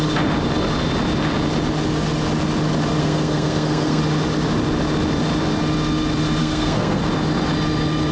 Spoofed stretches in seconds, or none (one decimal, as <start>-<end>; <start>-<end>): 3.0-4.0; 6.4-7.0